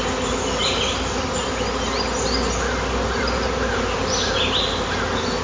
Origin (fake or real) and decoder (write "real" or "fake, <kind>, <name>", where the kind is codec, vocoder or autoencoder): real